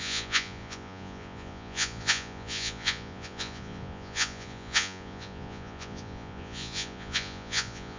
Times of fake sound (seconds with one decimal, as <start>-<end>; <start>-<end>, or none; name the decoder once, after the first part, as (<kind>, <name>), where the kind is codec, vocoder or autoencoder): 0.0-8.0 (vocoder, Vocos)